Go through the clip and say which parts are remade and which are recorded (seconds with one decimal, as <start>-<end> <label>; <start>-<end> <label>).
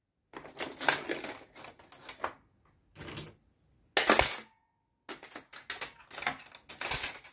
0.0-7.3 recorded